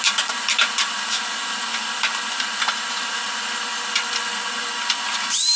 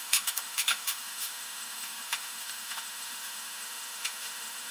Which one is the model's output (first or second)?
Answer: second